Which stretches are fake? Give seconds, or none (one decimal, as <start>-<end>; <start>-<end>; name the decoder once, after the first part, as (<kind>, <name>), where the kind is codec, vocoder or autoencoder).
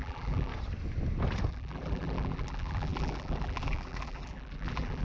0.0-0.5 (vocoder, BigVGAN v2); 1.5-5.0